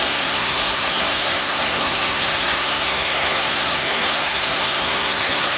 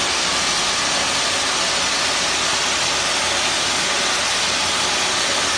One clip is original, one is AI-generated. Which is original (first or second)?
second